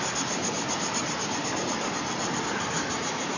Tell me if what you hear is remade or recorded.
recorded